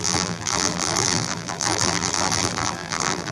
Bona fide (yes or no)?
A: no